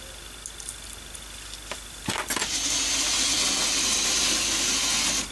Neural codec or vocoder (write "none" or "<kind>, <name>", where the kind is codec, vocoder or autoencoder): none